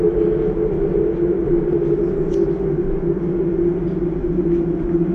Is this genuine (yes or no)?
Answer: yes